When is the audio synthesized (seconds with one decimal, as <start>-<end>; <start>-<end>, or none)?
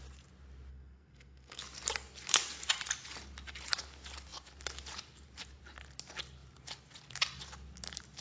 0.7-1.6